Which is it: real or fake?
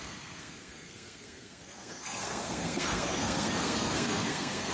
fake